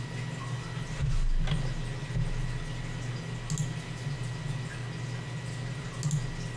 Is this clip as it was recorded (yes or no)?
yes